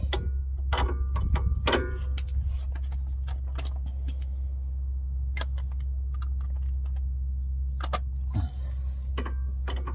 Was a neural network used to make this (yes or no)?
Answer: no